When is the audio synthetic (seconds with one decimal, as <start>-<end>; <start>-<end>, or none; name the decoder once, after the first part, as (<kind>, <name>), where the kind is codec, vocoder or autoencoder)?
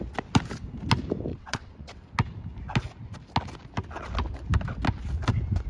1.3-1.9 (vocoder, WaveNeXt)